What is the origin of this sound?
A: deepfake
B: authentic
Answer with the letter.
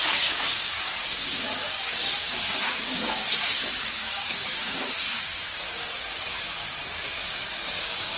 A